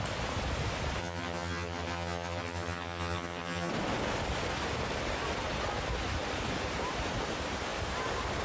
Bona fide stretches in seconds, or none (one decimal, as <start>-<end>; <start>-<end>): 0.0-1.0; 3.7-8.4